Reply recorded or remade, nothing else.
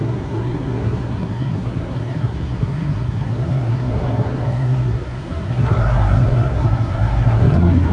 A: remade